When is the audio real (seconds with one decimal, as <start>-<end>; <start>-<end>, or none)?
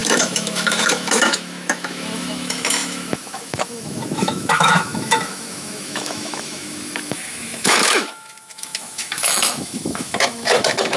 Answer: none